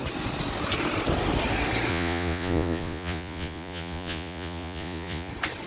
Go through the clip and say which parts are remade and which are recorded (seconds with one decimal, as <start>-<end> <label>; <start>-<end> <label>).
0.0-1.9 recorded; 1.9-5.3 remade; 5.3-5.7 recorded